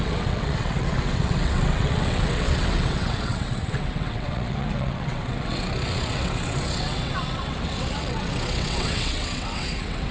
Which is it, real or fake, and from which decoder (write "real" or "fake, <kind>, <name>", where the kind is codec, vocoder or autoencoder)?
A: fake, vocoder, WaveNeXt